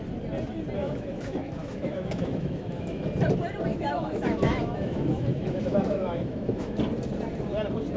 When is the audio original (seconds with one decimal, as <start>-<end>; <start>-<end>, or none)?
0.0-0.8; 3.0-3.7; 6.8-8.0